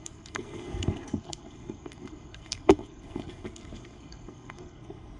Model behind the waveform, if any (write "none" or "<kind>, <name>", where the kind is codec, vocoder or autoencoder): codec, SNAC